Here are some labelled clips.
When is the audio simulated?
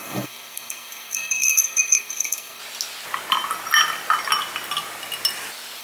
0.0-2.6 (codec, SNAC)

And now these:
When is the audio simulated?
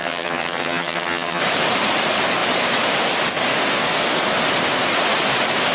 0.0-1.4 (vocoder, HiFi-GAN)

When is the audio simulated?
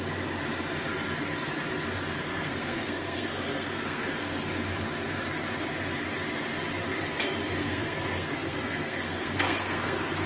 2.2-4.3 (codec, SNAC); 7.6-10.3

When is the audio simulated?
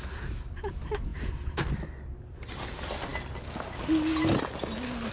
none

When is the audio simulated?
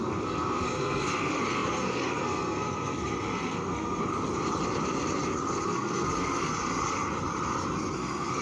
0.0-4.0 (codec, SNAC); 5.6-6.5; 7.9-8.4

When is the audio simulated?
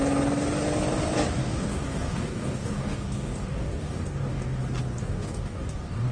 1.4-4.6 (codec, DAC); 5.0-6.1